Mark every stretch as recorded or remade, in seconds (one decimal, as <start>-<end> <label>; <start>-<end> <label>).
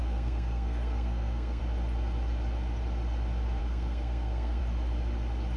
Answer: 0.0-1.6 remade; 1.6-3.6 recorded; 3.6-4.6 remade; 4.6-5.6 recorded